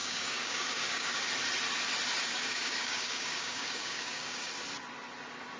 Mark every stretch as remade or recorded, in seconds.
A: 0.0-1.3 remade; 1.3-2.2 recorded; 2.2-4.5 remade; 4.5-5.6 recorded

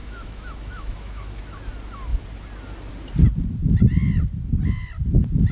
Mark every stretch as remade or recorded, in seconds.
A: 0.0-1.4 remade; 1.4-5.5 recorded

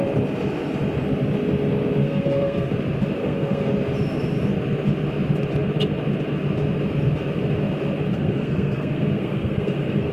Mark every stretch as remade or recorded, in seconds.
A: 0.0-2.0 recorded; 2.0-2.7 remade; 2.7-3.2 recorded; 3.2-3.7 remade; 3.7-8.1 recorded; 8.1-10.1 remade

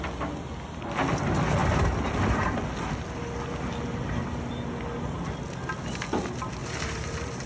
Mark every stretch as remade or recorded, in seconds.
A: 0.0-6.6 recorded; 6.6-7.5 remade

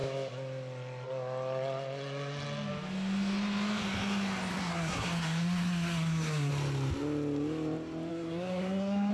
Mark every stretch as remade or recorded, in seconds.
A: 0.0-4.5 recorded; 4.5-6.5 remade; 6.5-8.1 recorded; 8.1-9.1 remade